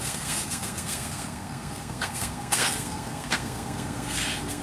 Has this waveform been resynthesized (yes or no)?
yes